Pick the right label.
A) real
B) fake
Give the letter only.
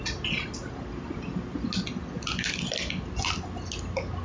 A